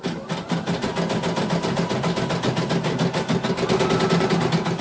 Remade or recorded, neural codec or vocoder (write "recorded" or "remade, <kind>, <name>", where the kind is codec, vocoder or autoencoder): recorded